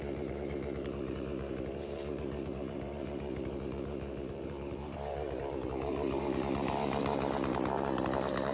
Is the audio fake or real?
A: fake